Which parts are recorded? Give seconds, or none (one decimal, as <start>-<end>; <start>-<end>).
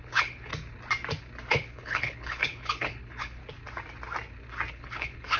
0.5-1.5; 3.4-4.7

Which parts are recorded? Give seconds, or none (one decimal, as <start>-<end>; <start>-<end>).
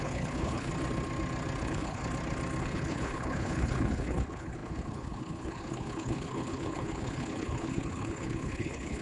0.7-1.6; 2.0-2.6